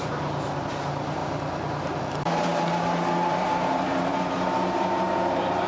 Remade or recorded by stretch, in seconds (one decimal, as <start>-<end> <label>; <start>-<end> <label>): 0.0-1.2 remade; 1.2-2.2 recorded; 2.2-5.7 remade